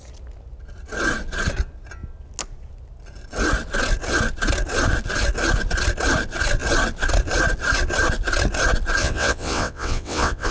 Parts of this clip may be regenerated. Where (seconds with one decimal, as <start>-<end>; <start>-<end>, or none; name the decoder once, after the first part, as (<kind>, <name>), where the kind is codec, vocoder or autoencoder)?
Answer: 9.0-10.5 (vocoder, WaveNeXt)